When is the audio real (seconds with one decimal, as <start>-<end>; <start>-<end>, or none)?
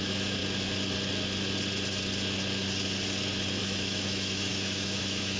0.4-3.6